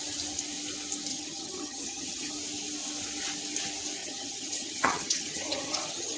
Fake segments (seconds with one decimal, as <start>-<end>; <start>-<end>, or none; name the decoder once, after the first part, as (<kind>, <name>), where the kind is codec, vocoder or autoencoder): 1.1-2.3 (vocoder, HiFi-GAN); 4.0-6.2